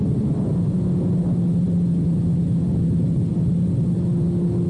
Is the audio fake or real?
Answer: real